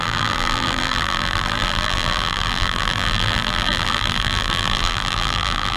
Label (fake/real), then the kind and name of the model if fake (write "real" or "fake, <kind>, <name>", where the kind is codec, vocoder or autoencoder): fake, vocoder, BigVGAN v2